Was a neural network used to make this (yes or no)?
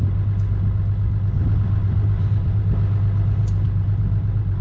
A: no